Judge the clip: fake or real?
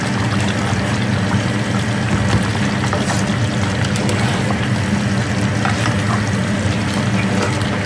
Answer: real